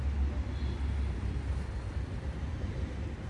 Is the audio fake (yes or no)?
no